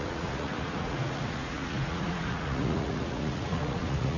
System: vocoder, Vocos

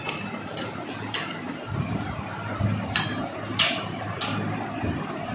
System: none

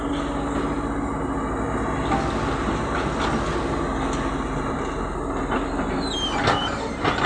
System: none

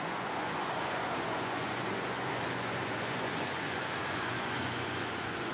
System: vocoder, Vocos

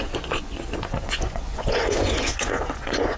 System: vocoder, Vocos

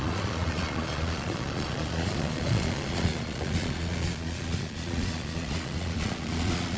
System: vocoder, Vocos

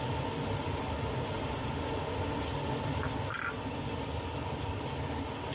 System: none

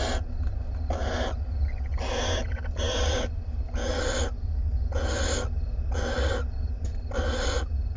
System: none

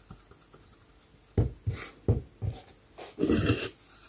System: none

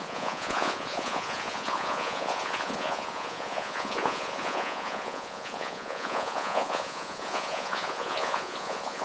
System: vocoder, Vocos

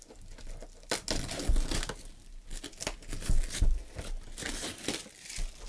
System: none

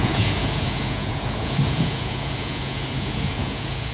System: vocoder, Vocos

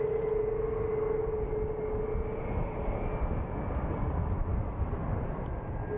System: none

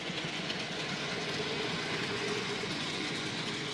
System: vocoder, Vocos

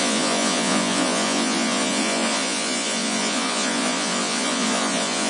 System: vocoder, Vocos